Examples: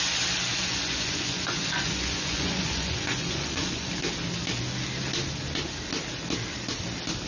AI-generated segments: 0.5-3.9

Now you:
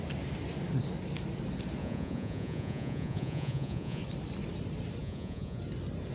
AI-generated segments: 1.8-4.0; 5.0-5.6

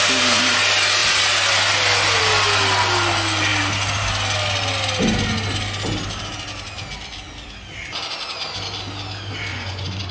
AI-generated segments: 9.5-10.1